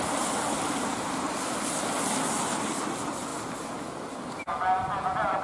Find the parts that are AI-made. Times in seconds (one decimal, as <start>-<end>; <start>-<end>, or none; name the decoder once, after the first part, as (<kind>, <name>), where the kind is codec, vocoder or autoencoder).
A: none